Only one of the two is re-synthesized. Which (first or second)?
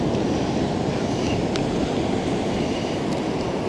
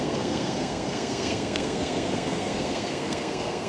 second